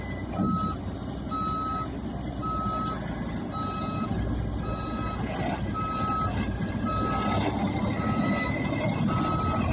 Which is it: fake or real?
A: real